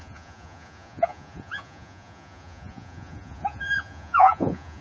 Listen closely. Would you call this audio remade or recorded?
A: remade